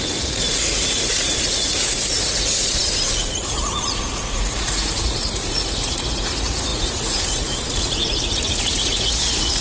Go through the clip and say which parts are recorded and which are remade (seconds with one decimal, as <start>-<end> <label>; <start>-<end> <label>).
0.0-9.6 remade